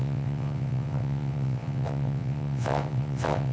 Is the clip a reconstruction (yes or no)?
yes